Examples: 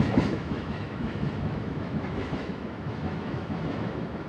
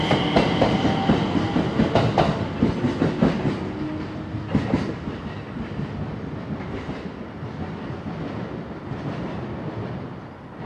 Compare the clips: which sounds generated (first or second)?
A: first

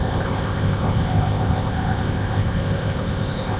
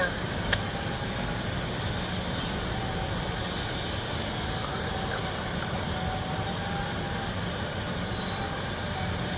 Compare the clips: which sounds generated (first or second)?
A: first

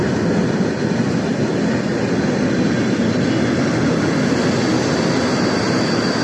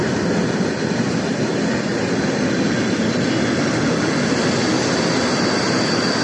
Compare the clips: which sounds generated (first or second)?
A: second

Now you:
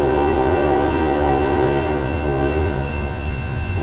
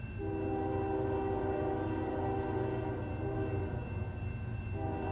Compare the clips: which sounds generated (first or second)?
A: first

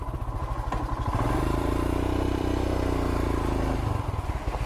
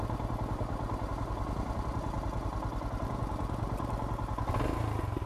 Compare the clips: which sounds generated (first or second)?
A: first